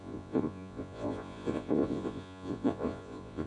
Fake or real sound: fake